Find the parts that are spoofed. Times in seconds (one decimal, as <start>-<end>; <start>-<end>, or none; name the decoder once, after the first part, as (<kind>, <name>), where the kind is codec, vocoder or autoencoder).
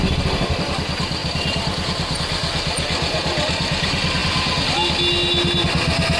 1.2-2.2 (vocoder, BigVGAN v2)